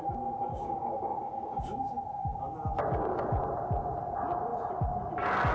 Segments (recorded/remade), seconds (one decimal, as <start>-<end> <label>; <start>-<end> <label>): 0.0-0.5 recorded; 0.5-1.6 remade; 1.6-2.2 recorded; 2.2-3.4 remade; 3.4-5.5 recorded

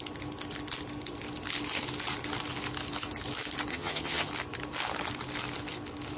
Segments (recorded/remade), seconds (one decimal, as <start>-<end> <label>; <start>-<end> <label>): 0.0-3.7 recorded; 3.7-4.3 remade; 4.3-6.2 recorded

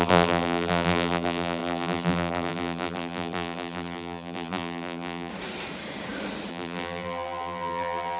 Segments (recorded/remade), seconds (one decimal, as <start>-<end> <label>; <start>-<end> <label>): 0.0-5.3 remade; 5.3-6.5 recorded; 6.5-8.2 remade

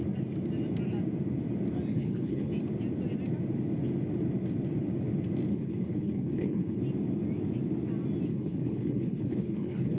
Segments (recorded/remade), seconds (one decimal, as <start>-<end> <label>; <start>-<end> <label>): 0.0-1.9 recorded; 1.9-2.5 remade; 2.5-5.5 recorded; 5.5-6.8 remade; 6.8-8.3 recorded; 8.3-10.0 remade

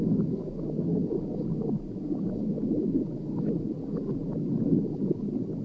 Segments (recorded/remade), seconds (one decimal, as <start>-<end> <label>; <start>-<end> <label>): 0.0-5.6 recorded

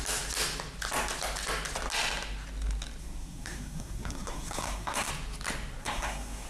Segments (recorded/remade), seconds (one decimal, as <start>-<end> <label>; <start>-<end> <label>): 0.0-3.0 recorded; 3.0-5.1 remade; 5.1-5.8 recorded; 5.8-6.5 remade